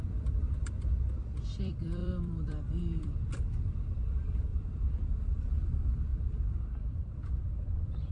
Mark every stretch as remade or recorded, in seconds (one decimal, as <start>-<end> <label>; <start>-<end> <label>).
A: 0.0-8.1 remade